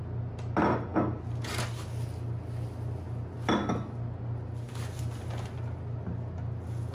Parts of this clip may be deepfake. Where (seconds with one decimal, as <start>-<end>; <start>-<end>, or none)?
none